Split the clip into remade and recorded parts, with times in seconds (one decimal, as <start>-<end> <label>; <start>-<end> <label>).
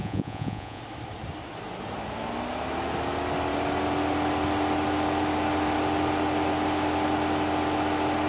0.0-0.8 remade; 0.8-8.3 recorded